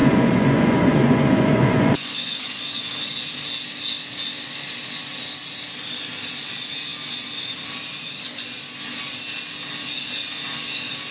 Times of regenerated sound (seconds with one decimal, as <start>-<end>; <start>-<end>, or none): 0.0-2.8